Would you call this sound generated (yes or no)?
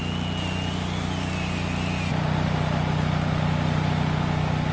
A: no